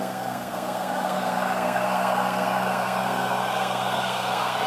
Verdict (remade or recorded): remade